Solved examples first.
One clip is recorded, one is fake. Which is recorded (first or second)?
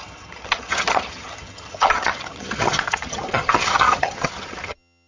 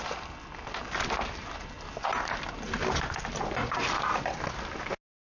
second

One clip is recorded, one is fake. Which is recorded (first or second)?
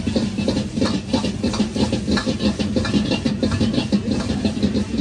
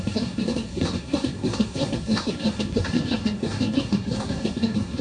first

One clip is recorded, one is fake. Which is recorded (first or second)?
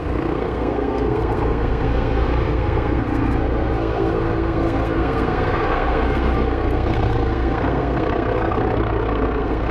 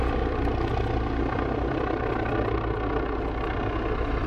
second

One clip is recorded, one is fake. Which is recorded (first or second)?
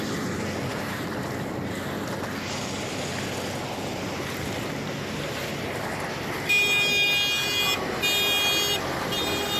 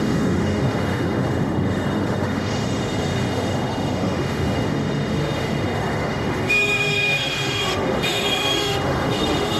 first